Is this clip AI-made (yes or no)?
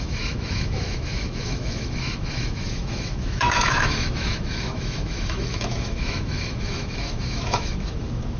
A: yes